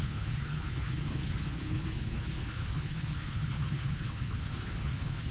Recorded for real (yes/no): no